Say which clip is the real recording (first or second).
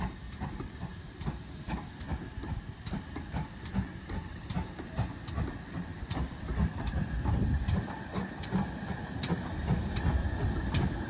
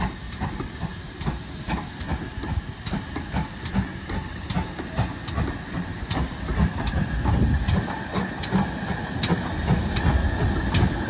second